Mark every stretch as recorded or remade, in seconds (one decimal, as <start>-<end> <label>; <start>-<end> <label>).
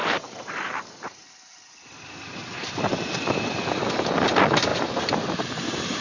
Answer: 0.0-1.3 remade; 1.3-2.4 recorded; 2.4-4.1 remade; 4.1-4.7 recorded; 4.7-6.0 remade